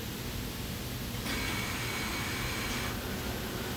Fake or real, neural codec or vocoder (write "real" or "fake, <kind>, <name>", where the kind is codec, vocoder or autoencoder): real